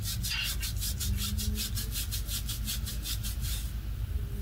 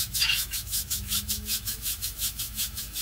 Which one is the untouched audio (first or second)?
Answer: first